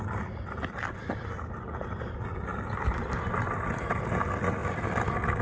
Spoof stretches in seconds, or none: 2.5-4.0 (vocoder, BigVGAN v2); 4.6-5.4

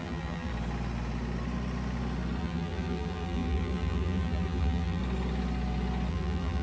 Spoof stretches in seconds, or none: 0.0-0.5 (vocoder, BigVGAN v2); 2.4-5.0; 6.1-6.6

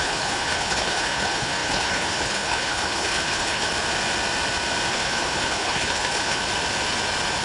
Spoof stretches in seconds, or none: 0.0-3.7 (codec, HILCodec); 4.9-6.4

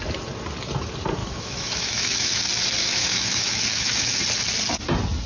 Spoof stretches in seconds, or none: 1.2-2.4 (autoencoder, DAC-VAE); 2.8-4.2

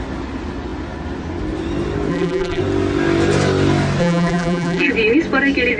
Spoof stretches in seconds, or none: 2.1-2.6 (vocoder, BigVGAN v2); 4.0-4.9

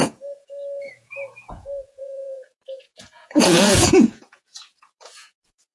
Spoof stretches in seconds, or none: 0.0-5.7 (vocoder, Vocos)

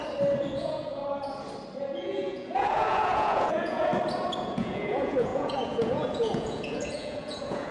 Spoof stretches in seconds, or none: 0.6-1.0 (vocoder, Vocos); 1.8-3.9; 4.4-7.7